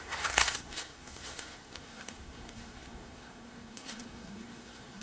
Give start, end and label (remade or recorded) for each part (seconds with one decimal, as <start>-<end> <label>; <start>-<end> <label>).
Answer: 0.0-5.0 remade

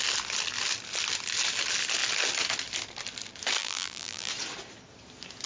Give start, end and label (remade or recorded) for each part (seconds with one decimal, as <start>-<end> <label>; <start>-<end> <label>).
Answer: 0.0-3.6 recorded; 3.6-4.3 remade; 4.3-5.5 recorded

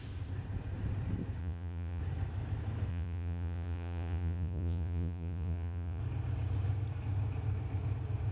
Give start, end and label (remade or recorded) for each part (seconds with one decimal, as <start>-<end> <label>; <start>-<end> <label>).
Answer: 0.0-1.4 recorded; 1.4-2.0 remade; 2.0-2.9 recorded; 2.9-6.0 remade; 6.0-8.3 recorded

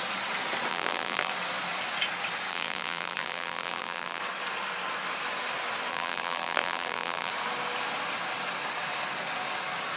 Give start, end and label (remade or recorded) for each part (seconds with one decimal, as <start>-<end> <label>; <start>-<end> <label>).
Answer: 0.0-0.7 recorded; 0.7-1.3 remade; 1.3-2.5 recorded; 2.5-4.2 remade; 4.2-5.9 recorded; 5.9-7.3 remade; 7.3-10.0 recorded

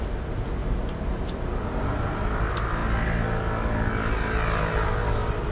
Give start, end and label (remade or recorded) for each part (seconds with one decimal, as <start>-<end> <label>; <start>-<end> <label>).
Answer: 0.0-5.5 recorded

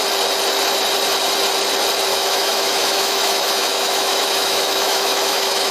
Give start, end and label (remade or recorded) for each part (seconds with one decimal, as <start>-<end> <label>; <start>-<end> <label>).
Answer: 0.0-2.1 recorded; 2.1-5.7 remade